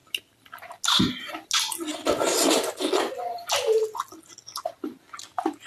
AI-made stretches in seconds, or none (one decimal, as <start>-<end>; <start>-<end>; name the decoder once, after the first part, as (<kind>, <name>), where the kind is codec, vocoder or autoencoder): none